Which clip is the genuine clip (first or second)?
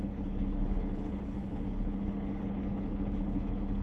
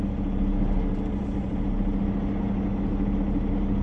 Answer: second